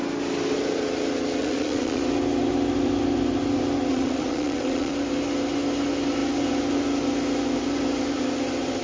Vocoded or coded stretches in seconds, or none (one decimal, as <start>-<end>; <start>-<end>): 1.4-2.0; 3.9-4.9